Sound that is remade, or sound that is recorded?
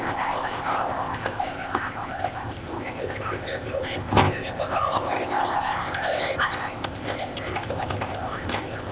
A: remade